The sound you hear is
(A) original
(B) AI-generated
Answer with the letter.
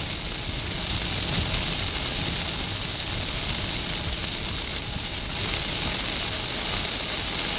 A